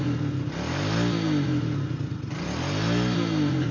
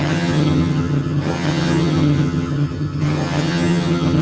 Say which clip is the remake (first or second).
second